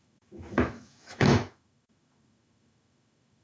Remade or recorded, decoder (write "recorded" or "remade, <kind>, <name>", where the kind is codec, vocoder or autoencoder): remade, autoencoder, DAC-VAE